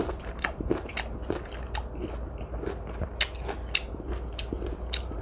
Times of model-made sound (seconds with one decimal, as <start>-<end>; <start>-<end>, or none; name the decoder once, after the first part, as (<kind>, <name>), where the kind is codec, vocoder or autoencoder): 0.0-0.9 (vocoder, BigVGAN v2); 2.4-3.1; 3.9-5.2